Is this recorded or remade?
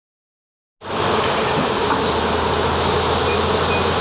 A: recorded